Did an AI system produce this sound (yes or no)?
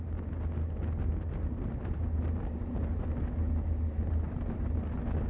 no